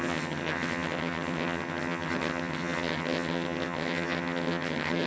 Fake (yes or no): yes